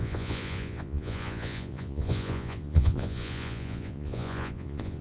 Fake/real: fake